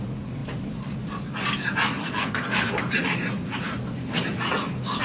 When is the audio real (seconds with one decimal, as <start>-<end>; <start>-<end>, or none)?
0.0-2.0; 2.8-5.0